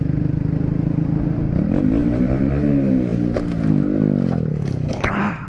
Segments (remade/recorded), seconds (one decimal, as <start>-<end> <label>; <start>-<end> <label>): 0.0-4.5 recorded; 4.5-5.1 remade; 5.1-5.5 recorded